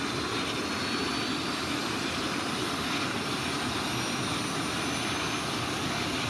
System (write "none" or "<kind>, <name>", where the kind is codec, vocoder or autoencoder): none